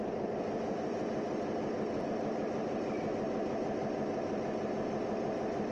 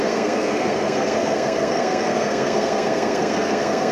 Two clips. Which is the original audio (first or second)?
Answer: first